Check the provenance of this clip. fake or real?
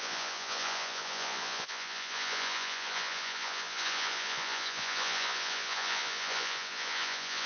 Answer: fake